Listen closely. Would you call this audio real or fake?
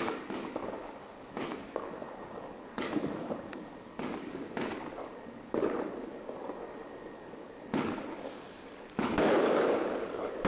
fake